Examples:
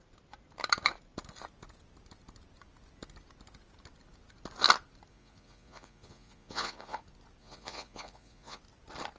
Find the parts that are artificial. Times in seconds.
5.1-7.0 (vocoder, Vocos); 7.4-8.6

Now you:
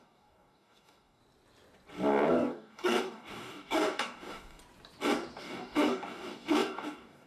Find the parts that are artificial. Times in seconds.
0.0-1.2 (codec, DAC); 2.3-4.6; 5.4-7.3

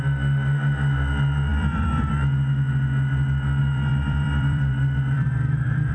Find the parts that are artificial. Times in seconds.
1.5-2.1 (vocoder, BigVGAN v2); 3.6-5.9

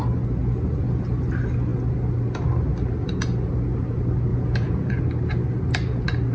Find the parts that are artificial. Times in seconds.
4.3-5.0 (vocoder, Vocos)

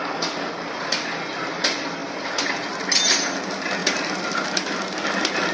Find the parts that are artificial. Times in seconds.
none

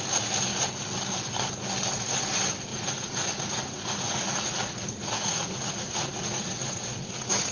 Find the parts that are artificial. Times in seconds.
2.7-7.5 (vocoder, Vocos)

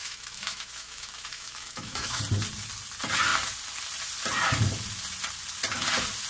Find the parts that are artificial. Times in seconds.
0.0-2.2 (autoencoder, DAC-VAE)